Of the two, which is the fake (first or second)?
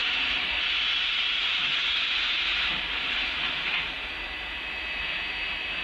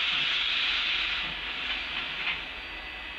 first